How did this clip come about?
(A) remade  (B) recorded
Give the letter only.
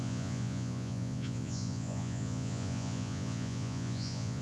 A